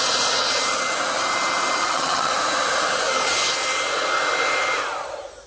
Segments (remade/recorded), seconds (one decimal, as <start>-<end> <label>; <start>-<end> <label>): 0.0-1.8 recorded; 1.8-2.3 remade; 2.3-5.5 recorded